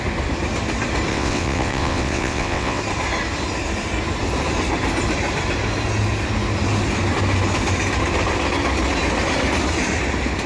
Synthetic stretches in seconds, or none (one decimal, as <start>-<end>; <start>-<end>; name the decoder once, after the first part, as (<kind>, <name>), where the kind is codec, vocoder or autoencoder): 1.1-2.8 (vocoder, WaveNeXt)